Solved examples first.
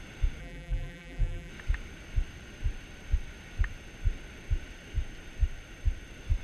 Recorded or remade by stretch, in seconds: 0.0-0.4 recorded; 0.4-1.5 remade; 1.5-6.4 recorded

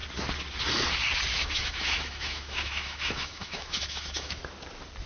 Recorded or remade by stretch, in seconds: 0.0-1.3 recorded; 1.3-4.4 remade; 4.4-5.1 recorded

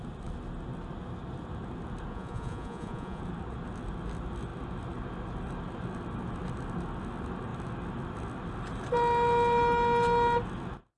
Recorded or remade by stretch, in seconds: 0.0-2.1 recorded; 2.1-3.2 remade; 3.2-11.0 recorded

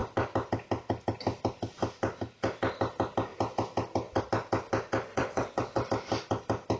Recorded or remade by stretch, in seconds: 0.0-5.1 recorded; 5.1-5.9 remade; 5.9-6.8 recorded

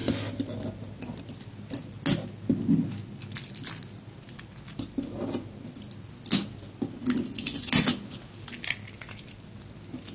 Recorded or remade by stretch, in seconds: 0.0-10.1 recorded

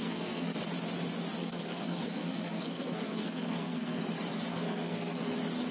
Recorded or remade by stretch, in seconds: 0.0-0.6 remade; 0.6-1.4 recorded; 1.4-4.0 remade; 4.0-4.5 recorded; 4.5-5.2 remade; 5.2-5.7 recorded